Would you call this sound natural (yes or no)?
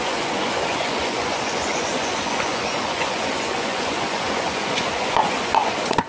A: no